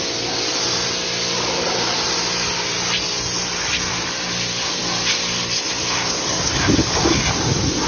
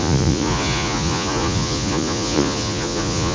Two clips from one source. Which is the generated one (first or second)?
second